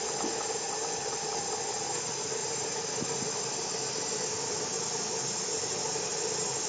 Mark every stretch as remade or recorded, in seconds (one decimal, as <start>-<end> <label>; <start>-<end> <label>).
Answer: 0.0-2.4 recorded; 2.4-4.8 remade; 4.8-6.7 recorded